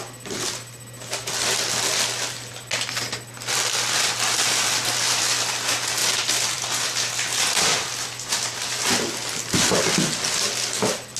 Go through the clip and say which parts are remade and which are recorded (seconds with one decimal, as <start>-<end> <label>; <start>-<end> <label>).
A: 0.0-6.0 recorded; 6.0-6.8 remade; 6.8-11.2 recorded